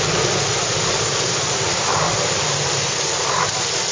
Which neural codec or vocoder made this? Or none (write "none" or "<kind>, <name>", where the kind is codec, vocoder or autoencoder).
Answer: none